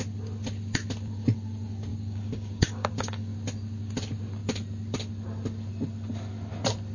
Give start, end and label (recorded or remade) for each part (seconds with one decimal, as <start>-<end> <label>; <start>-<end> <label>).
0.0-1.9 recorded; 1.9-2.9 remade; 2.9-6.9 recorded